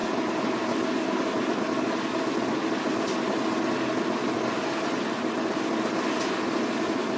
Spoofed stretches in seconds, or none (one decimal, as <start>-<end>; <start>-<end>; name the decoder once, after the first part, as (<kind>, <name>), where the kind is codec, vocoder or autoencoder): none